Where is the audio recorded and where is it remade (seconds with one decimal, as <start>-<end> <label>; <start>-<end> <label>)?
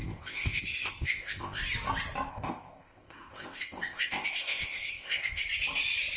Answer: 0.0-1.6 remade; 1.6-2.3 recorded; 2.3-5.4 remade; 5.4-6.2 recorded